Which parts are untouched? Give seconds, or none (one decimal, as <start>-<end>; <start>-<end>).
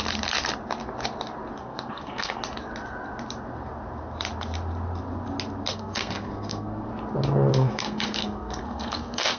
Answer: 0.0-1.6; 2.4-5.7; 6.9-7.5